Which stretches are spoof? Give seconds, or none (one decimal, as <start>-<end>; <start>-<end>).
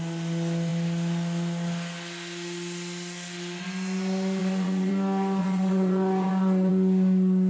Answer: 4.4-4.9; 5.4-6.7